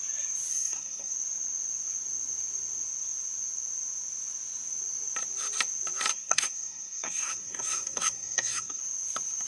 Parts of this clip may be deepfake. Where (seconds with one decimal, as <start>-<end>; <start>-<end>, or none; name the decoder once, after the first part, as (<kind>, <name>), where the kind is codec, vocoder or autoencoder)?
0.5-1.1 (codec, SNAC); 6.1-8.8